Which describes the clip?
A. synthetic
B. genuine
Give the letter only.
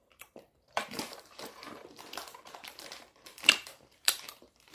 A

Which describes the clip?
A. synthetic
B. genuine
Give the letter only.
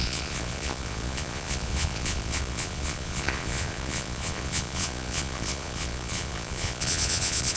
A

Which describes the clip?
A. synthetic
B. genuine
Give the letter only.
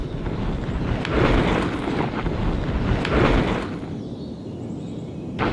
B